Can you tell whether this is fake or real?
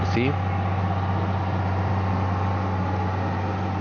real